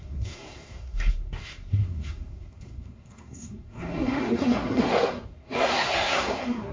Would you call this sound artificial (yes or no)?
yes